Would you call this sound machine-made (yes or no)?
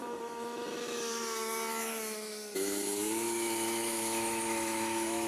yes